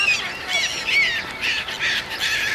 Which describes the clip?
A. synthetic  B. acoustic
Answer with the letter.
B